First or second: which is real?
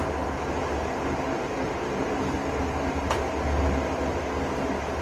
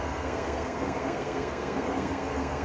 first